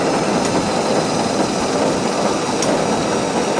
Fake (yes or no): no